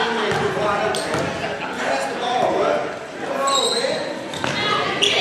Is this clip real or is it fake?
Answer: real